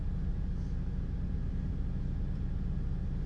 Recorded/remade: recorded